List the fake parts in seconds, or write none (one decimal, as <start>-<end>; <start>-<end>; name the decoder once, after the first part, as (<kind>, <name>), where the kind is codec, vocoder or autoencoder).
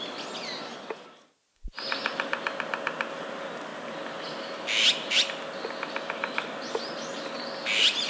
none